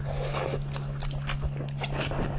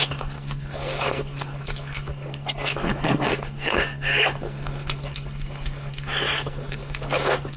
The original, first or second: first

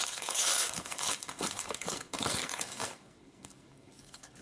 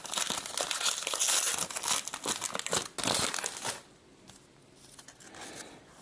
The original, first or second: second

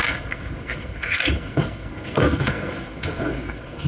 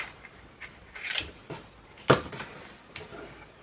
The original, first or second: second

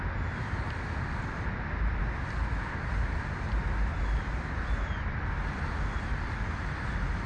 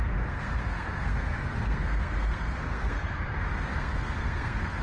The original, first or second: first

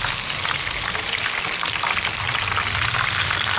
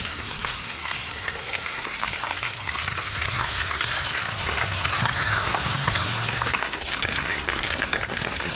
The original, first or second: first